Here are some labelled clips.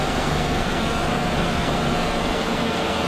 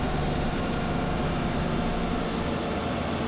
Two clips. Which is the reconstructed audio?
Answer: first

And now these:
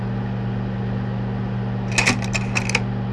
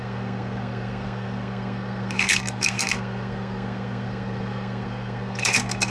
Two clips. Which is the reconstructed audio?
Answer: second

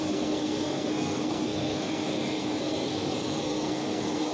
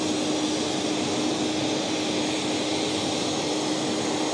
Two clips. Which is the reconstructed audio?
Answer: first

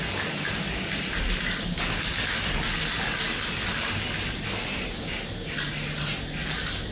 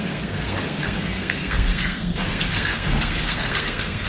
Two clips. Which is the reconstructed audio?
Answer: second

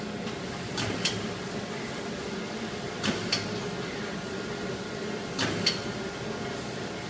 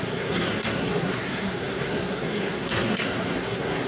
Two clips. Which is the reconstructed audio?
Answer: second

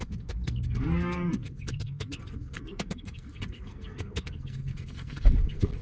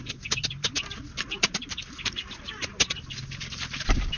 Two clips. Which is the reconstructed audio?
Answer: first